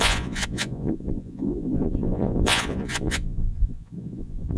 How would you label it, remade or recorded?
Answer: remade